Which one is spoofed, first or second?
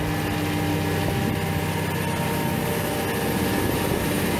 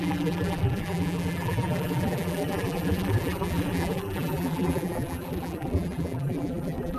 second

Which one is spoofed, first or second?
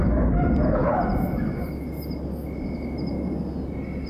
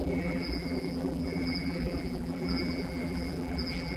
second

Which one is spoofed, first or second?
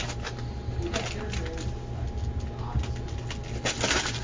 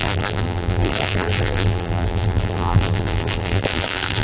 second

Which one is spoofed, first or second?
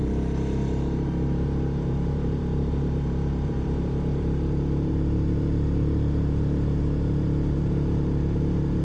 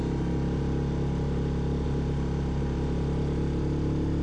first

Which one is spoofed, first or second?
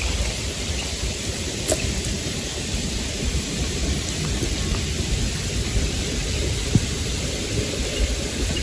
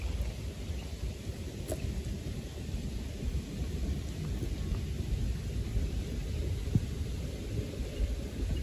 first